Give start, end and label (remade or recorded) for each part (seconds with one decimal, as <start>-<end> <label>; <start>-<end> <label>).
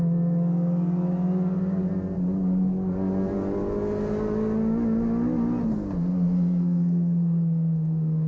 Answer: 0.0-6.1 recorded; 6.1-8.3 remade